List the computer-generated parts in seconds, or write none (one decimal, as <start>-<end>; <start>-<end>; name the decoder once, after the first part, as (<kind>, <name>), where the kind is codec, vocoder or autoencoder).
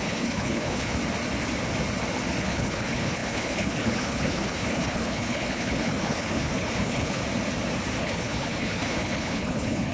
0.0-1.0 (codec, HILCodec); 2.4-7.2; 8.0-9.9